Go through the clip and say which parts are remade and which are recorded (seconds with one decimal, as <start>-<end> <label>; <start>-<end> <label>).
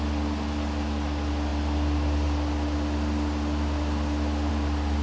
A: 0.0-5.0 recorded